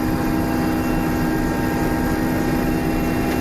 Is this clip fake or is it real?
real